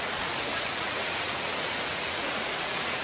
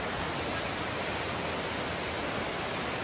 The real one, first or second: second